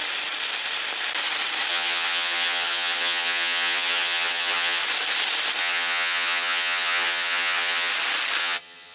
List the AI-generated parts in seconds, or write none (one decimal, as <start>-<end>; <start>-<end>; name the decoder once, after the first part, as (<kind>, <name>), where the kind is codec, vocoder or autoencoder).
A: 1.7-4.8 (vocoder, HiFi-GAN); 5.6-7.9; 8.4-8.9